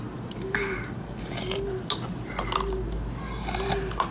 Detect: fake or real real